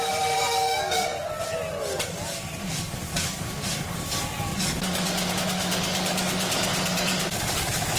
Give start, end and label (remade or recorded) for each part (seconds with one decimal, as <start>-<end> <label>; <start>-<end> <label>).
0.0-1.1 remade; 1.1-2.1 recorded; 2.1-8.0 remade